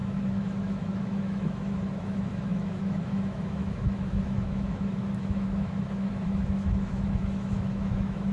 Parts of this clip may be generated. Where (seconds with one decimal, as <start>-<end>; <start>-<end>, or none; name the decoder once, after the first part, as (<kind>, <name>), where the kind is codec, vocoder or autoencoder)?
0.0-8.3 (autoencoder, DAC-VAE)